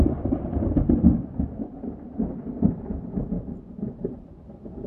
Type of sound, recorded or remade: recorded